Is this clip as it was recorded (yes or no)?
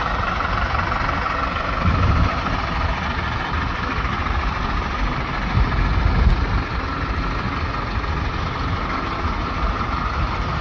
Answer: yes